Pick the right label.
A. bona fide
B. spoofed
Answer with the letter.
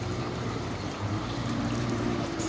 B